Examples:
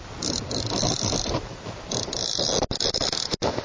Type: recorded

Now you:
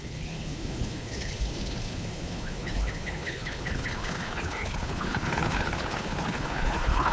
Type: remade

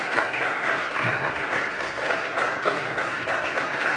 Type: remade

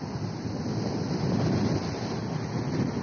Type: recorded